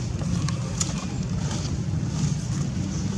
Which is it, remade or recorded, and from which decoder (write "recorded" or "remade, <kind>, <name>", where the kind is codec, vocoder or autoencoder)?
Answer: recorded